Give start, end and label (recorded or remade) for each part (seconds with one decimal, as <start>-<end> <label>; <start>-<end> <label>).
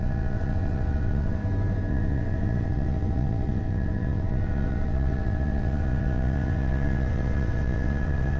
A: 0.0-1.4 remade; 1.4-1.9 recorded; 1.9-8.4 remade